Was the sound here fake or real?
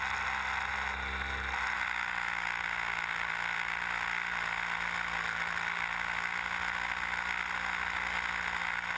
real